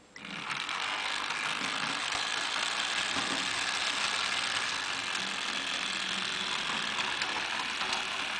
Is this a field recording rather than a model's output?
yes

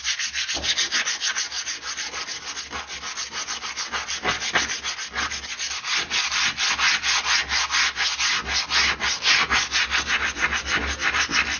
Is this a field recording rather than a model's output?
yes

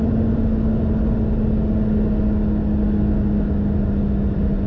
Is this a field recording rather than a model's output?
yes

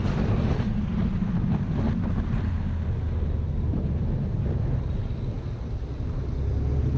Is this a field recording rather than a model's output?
yes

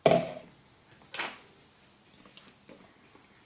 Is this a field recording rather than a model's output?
yes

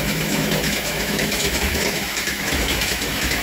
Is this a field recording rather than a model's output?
no